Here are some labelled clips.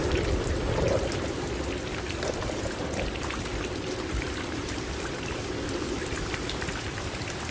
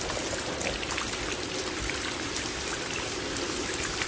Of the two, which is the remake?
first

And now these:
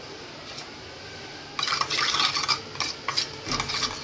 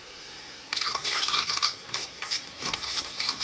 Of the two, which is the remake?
second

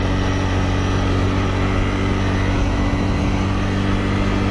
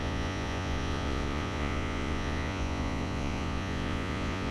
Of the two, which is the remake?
second